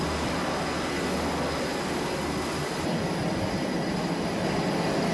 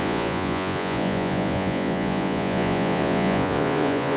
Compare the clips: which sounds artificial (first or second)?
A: second